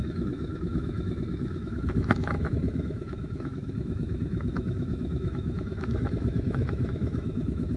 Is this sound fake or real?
fake